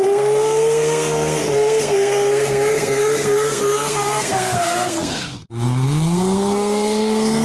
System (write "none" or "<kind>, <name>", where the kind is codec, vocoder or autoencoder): codec, SNAC